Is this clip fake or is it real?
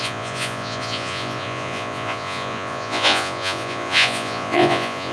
fake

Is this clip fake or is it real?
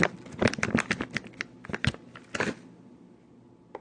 real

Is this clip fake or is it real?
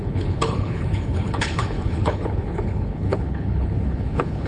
fake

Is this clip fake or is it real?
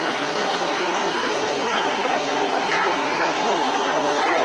fake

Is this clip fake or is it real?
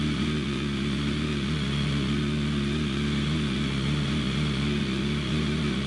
fake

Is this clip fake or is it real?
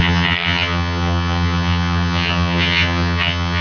fake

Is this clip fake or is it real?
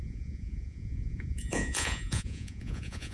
fake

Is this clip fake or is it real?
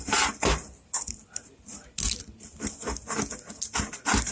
real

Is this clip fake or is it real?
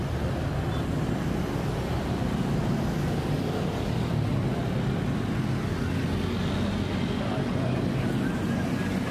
real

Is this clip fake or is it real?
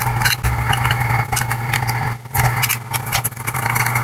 real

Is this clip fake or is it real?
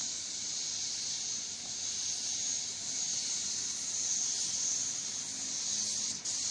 real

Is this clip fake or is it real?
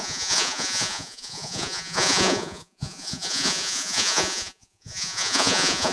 fake